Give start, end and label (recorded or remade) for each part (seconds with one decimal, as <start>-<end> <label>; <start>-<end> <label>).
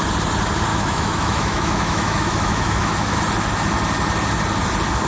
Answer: 0.0-0.7 recorded; 0.7-3.2 remade; 3.2-5.1 recorded